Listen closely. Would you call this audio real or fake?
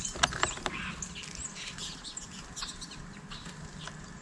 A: real